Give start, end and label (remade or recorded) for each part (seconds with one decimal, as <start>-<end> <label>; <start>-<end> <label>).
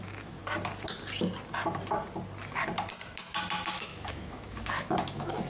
0.0-0.4 remade; 0.4-3.7 recorded; 3.7-5.5 remade